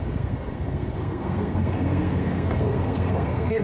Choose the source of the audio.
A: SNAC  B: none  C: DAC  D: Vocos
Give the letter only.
A